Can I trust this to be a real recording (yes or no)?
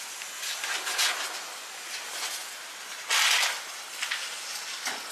yes